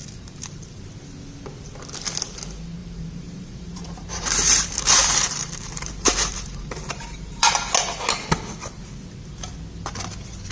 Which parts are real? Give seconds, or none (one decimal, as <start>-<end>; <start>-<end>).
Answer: 0.8-2.8; 7.5-10.5